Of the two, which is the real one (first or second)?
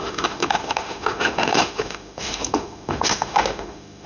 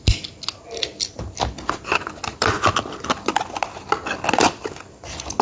second